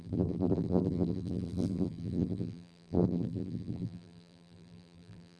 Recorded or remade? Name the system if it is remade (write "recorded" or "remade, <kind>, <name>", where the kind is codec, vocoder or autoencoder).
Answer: remade, vocoder, BigVGAN v2